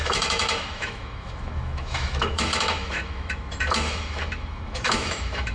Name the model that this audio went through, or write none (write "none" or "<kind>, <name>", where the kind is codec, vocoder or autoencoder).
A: autoencoder, DAC-VAE